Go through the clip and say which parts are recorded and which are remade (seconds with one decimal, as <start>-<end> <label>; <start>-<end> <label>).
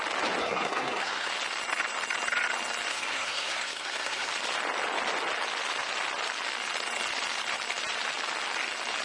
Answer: 0.0-0.4 recorded; 0.4-1.3 remade; 1.3-2.9 recorded; 2.9-4.3 remade; 4.3-9.0 recorded